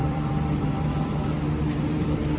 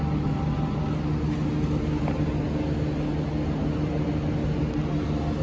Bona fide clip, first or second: second